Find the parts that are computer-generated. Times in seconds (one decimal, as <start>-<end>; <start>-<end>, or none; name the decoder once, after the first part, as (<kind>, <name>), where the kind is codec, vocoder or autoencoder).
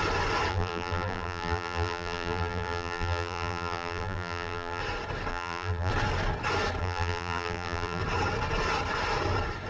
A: 0.5-4.8 (vocoder, BigVGAN v2); 5.3-5.9; 6.8-8.0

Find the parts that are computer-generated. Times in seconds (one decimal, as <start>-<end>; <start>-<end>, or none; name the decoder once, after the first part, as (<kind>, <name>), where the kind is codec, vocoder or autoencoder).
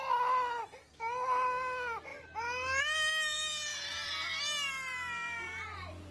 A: 3.7-4.3 (vocoder, BigVGAN v2)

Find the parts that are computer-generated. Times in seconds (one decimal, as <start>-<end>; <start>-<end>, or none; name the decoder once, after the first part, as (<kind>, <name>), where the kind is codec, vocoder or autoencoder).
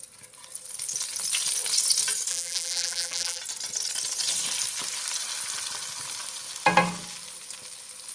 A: 2.3-3.4 (vocoder, BigVGAN v2)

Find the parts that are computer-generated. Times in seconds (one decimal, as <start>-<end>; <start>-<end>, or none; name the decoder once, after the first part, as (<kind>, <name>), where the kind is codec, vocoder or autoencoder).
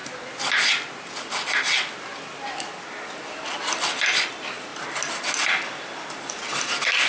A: 4.3-4.7 (vocoder, BigVGAN v2); 6.1-7.1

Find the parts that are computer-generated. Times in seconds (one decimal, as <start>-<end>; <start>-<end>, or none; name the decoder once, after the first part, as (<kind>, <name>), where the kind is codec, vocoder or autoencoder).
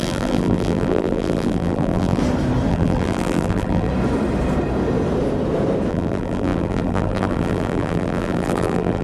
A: 0.0-2.2 (vocoder, BigVGAN v2); 2.7-3.9; 5.9-9.0